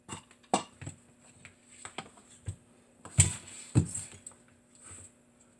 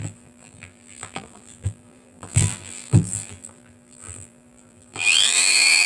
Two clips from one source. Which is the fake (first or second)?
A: second